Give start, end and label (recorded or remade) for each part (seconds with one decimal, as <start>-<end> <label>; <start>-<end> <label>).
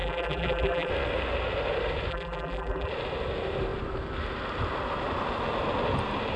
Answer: 0.0-0.9 remade; 0.9-2.1 recorded; 2.1-2.9 remade; 2.9-6.4 recorded